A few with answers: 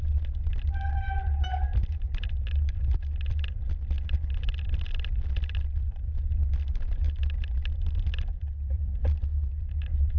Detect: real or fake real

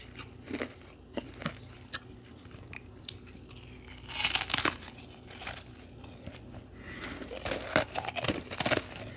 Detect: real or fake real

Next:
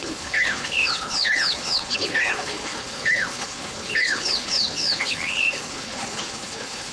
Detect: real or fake fake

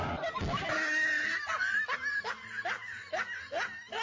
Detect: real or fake real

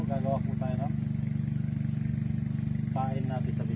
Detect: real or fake real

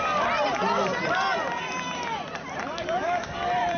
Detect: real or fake fake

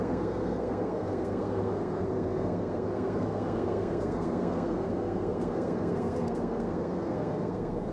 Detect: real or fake fake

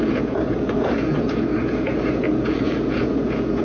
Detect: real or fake fake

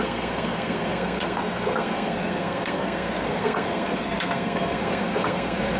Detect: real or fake fake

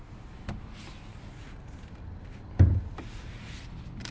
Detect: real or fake real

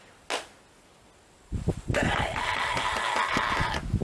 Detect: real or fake real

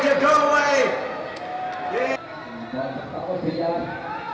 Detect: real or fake real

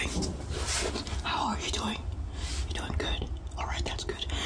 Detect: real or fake real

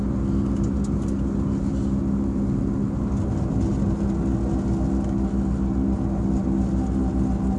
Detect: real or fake real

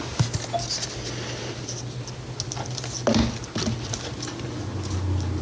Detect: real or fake real